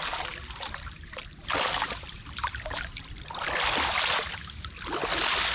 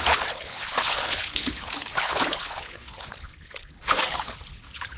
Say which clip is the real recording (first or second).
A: first